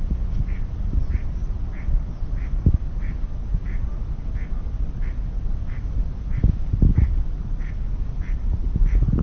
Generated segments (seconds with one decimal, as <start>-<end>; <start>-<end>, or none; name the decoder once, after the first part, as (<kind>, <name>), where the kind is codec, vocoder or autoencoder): none